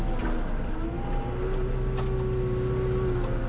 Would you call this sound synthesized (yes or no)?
no